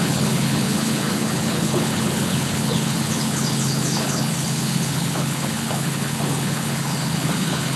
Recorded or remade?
remade